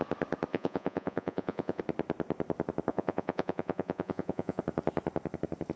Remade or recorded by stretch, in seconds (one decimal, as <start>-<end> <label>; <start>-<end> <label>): 0.0-0.5 recorded; 0.5-1.8 remade; 1.8-2.9 recorded; 2.9-4.6 remade; 4.6-5.8 recorded